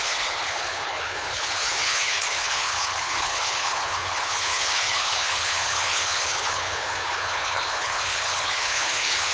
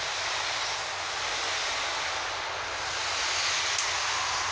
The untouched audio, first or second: second